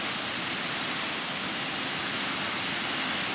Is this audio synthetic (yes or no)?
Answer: yes